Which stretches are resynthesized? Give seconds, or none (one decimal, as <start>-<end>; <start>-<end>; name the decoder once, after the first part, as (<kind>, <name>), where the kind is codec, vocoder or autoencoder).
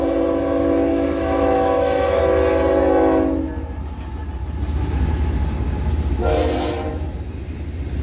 0.9-2.2 (autoencoder, DAC-VAE)